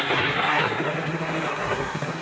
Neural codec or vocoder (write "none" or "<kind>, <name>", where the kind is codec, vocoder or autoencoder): codec, SNAC